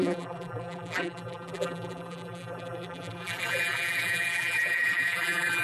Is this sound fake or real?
fake